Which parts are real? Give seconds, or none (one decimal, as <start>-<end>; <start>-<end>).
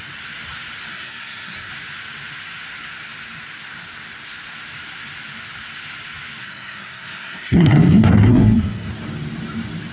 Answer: 0.0-0.9; 1.7-6.4; 8.9-9.9